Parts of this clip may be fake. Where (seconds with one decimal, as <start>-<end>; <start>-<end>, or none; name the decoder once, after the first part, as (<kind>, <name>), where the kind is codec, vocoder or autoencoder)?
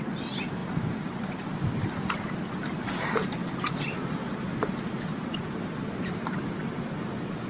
0.6-1.4 (vocoder, BigVGAN v2); 3.4-6.8